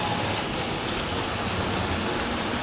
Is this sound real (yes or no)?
yes